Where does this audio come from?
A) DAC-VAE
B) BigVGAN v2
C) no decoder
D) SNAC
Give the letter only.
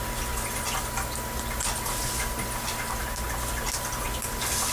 C